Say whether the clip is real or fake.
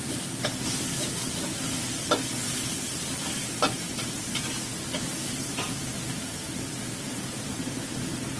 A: real